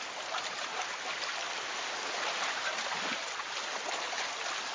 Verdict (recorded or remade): recorded